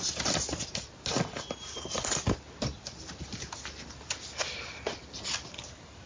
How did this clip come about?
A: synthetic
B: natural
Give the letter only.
B